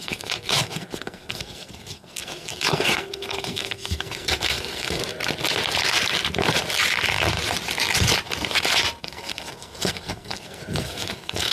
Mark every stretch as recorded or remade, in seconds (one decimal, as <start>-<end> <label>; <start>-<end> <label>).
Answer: 0.0-5.0 remade; 5.0-9.0 recorded; 9.0-11.5 remade